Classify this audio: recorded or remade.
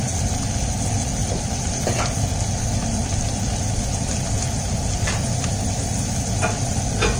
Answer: recorded